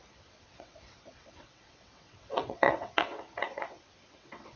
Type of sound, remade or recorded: remade